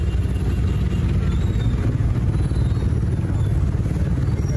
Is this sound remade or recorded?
recorded